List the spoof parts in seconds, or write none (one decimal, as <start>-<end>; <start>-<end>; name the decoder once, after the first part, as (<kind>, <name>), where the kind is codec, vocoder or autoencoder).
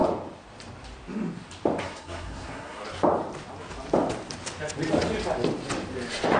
1.8-2.8 (codec, SNAC)